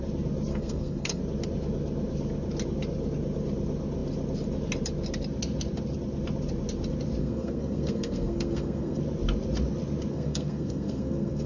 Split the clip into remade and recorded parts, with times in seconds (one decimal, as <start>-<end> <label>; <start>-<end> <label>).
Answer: 0.0-0.5 recorded; 0.5-1.2 remade; 1.2-7.2 recorded; 7.2-9.0 remade; 9.0-10.1 recorded; 10.1-11.5 remade